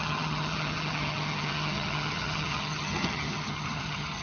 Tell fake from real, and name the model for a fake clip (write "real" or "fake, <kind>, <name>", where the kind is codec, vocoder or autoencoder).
fake, vocoder, HiFi-GAN